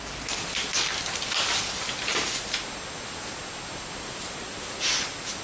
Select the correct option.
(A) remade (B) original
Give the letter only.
B